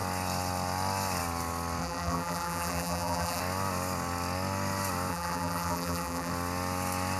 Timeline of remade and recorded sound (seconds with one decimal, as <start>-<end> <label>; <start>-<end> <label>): 0.0-1.8 recorded; 1.8-3.4 remade; 3.4-5.1 recorded; 5.1-6.3 remade; 6.3-7.2 recorded